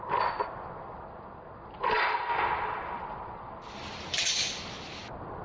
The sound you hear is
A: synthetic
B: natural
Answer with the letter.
B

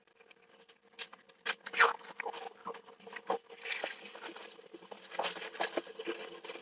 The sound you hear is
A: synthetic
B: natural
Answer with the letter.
B